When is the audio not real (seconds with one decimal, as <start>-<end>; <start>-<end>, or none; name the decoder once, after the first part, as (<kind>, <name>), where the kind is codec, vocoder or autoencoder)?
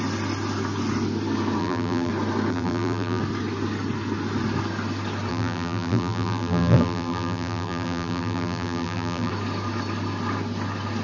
1.6-2.1 (vocoder, BigVGAN v2); 2.5-3.2; 5.3-9.3